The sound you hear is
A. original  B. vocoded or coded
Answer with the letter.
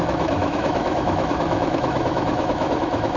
B